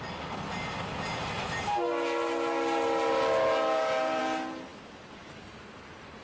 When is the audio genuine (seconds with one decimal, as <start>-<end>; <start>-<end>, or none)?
0.0-6.2